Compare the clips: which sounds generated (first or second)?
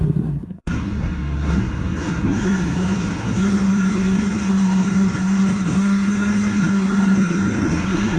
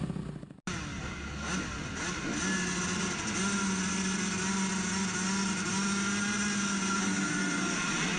first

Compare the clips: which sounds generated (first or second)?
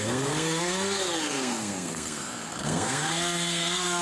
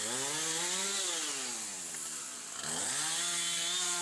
first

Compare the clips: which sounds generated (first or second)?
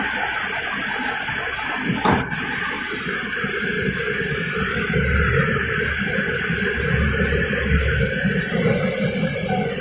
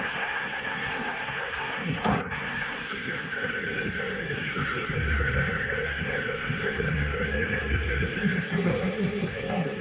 second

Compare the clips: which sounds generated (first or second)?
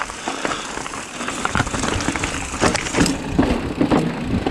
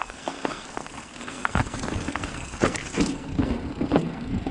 second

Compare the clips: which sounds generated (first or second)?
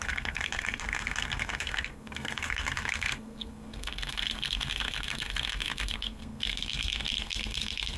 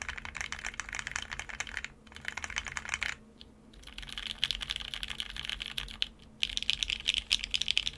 first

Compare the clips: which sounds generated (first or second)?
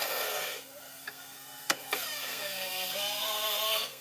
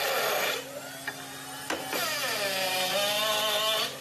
first